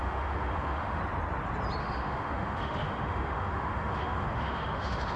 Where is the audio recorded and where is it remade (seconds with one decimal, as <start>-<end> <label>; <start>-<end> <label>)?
0.0-1.0 remade; 1.0-1.8 recorded; 1.8-5.2 remade